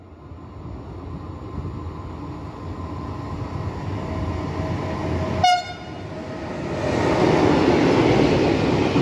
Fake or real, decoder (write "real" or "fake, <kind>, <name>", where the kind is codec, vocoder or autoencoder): real